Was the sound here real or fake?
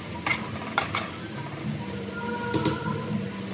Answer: real